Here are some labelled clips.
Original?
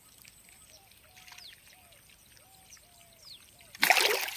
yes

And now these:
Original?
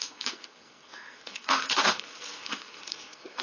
no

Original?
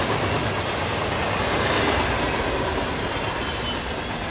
yes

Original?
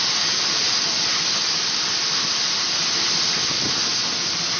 yes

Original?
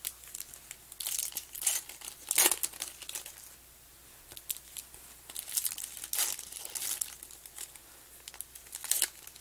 yes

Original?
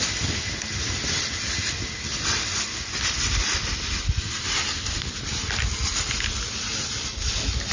yes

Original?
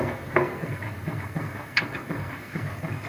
no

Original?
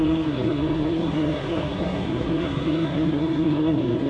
no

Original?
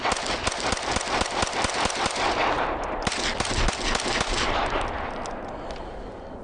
yes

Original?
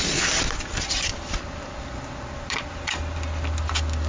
yes